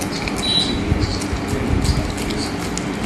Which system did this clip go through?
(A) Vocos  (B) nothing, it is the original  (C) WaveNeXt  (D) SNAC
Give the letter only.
B